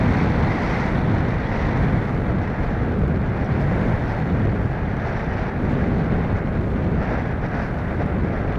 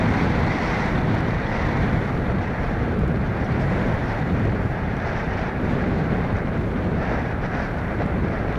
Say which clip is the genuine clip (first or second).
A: first